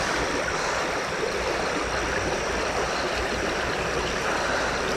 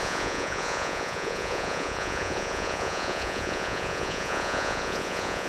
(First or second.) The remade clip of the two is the second